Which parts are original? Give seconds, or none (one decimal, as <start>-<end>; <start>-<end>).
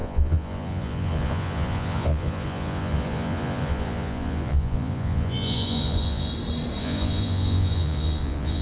6.3-6.8